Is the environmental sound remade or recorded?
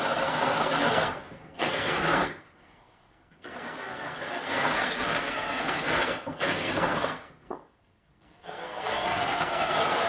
remade